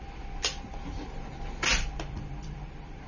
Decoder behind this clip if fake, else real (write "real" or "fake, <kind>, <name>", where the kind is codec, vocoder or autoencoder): fake, vocoder, BigVGAN v2